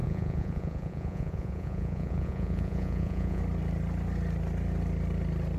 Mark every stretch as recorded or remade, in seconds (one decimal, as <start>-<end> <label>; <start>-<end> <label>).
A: 0.0-3.4 remade; 3.4-5.6 recorded